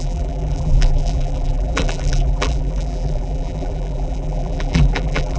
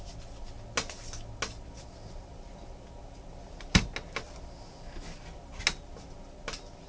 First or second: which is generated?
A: first